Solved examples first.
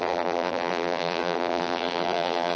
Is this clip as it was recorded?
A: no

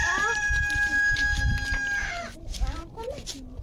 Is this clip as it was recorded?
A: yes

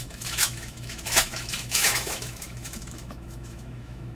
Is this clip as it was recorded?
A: no